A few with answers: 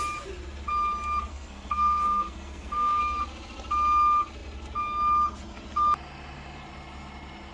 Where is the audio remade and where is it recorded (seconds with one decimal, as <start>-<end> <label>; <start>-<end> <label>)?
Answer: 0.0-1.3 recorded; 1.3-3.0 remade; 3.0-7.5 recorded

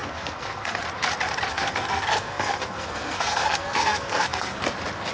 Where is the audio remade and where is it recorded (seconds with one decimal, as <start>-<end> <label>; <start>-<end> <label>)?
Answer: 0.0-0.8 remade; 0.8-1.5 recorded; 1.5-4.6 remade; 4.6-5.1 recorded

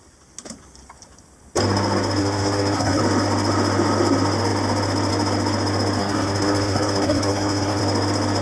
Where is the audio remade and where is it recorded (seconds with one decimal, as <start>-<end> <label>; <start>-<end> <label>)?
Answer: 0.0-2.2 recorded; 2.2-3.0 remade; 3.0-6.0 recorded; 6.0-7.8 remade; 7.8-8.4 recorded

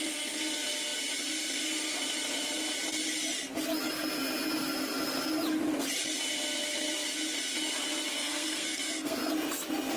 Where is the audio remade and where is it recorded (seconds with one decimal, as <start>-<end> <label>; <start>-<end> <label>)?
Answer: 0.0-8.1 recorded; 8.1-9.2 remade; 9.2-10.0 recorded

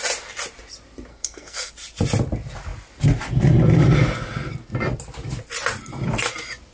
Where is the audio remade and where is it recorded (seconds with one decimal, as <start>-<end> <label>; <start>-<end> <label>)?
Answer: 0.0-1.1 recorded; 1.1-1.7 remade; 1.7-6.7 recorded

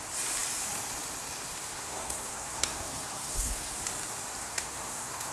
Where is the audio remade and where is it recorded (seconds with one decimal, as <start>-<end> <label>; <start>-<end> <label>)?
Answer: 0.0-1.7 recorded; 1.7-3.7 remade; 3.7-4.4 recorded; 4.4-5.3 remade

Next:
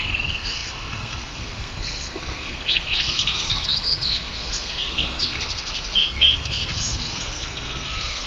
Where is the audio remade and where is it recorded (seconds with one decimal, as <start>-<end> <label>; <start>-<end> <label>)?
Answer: 0.0-8.3 remade

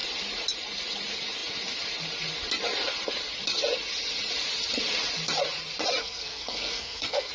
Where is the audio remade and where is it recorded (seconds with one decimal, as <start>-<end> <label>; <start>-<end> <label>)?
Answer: 0.0-6.0 recorded; 6.0-7.3 remade